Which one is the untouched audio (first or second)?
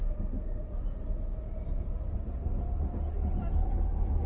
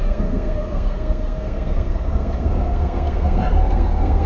first